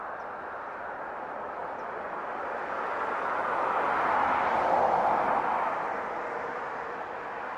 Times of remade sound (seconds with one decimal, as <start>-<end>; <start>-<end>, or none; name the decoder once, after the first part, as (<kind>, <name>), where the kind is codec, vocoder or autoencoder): none